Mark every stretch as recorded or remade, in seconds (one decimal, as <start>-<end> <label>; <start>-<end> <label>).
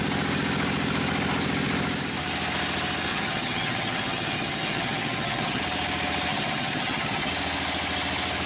0.0-3.1 recorded; 3.1-5.6 remade; 5.6-6.3 recorded; 6.3-7.3 remade; 7.3-8.5 recorded